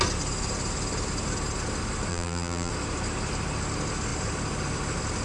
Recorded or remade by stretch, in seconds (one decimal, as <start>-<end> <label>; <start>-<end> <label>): 0.0-2.1 recorded; 2.1-2.7 remade; 2.7-5.2 recorded